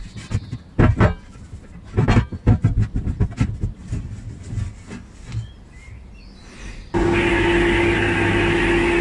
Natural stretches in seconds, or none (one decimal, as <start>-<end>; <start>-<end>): 0.0-9.0